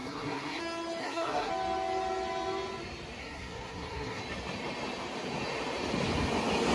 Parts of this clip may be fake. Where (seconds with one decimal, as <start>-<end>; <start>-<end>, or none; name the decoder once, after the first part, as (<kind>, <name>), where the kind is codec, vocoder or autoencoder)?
0.0-0.6 (codec, SNAC); 1.0-1.5; 3.2-4.2